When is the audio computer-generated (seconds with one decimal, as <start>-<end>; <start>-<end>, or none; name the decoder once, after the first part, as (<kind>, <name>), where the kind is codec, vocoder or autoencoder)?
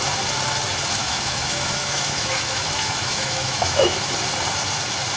1.0-4.1 (autoencoder, DAC-VAE)